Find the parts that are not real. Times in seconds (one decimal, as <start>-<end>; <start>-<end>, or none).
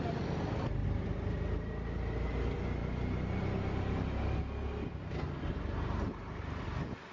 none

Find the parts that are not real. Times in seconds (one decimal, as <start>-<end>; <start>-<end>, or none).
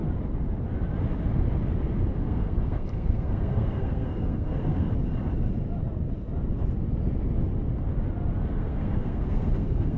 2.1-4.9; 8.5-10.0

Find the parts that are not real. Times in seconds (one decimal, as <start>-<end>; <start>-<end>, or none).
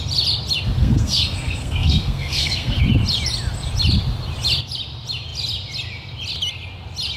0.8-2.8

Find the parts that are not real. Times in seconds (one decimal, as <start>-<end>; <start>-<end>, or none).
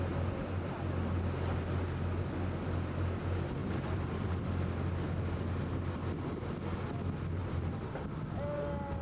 3.6-4.4; 7.4-8.0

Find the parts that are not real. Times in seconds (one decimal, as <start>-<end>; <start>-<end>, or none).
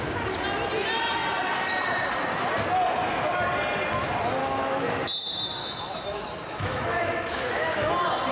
4.4-5.0; 5.6-7.9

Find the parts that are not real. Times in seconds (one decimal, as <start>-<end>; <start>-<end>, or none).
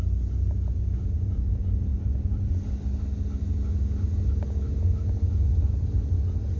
none